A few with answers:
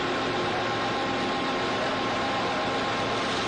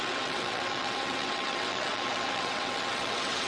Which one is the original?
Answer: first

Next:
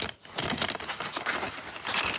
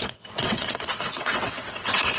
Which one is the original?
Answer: first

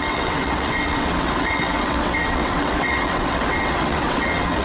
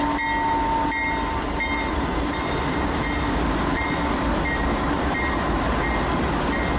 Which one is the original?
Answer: second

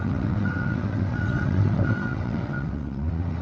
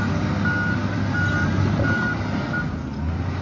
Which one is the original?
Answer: second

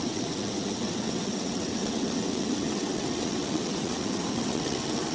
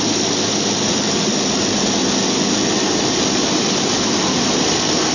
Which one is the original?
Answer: second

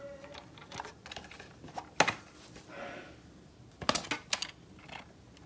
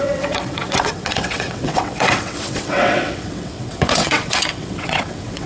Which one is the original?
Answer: first